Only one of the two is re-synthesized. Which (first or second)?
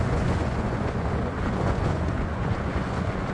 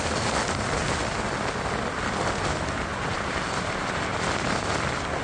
first